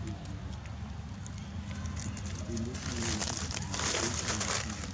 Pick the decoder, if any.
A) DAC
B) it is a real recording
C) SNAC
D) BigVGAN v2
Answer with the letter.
B